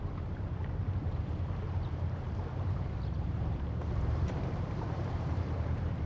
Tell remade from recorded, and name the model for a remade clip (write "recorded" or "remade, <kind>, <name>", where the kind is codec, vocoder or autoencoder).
remade, vocoder, BigVGAN v2